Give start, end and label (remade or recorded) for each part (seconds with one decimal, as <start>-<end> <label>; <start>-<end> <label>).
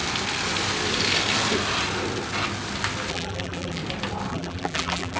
0.0-3.1 recorded; 3.1-3.8 remade; 3.8-4.3 recorded; 4.3-5.2 remade